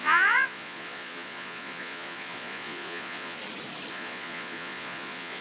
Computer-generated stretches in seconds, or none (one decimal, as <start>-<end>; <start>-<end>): 0.0-3.4; 3.9-5.4